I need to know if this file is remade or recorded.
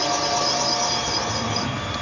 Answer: recorded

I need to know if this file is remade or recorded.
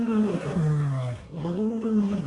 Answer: remade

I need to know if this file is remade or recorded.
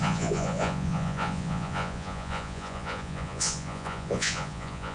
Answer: remade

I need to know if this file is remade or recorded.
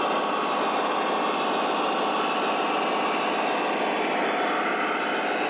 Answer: recorded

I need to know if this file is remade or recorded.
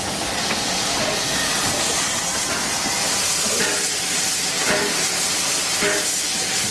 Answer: recorded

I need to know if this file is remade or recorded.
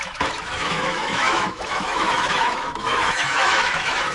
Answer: remade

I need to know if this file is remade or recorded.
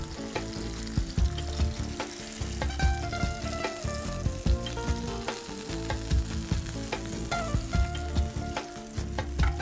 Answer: recorded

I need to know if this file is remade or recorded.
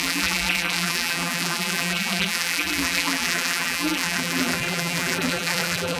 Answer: remade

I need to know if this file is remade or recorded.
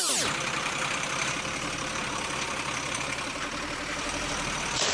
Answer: remade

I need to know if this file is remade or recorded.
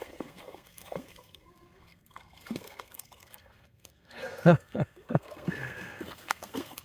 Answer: remade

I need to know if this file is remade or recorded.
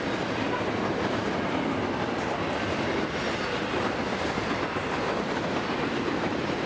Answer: recorded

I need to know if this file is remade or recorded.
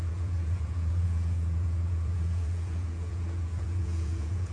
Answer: remade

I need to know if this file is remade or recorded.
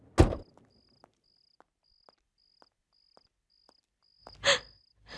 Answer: recorded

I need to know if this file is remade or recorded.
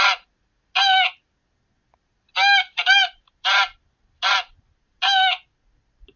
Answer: recorded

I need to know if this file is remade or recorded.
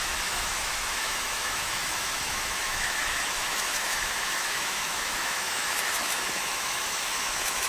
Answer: remade